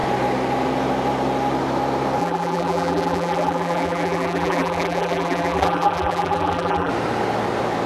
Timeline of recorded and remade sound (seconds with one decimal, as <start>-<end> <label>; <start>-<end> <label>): 0.0-2.2 recorded; 2.2-6.9 remade; 6.9-7.9 recorded